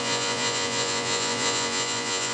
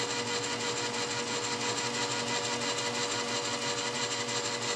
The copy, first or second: first